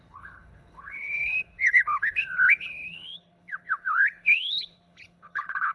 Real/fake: fake